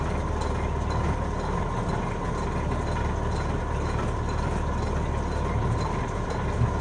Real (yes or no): yes